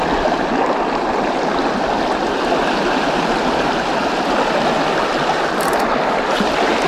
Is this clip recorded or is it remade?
recorded